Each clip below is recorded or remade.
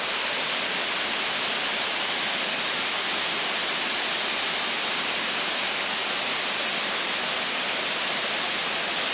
recorded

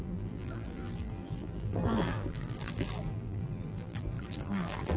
remade